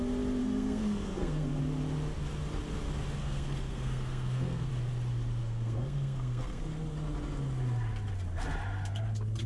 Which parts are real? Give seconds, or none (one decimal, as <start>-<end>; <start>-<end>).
0.0-0.4; 1.6-3.2; 4.7-5.4; 6.6-9.5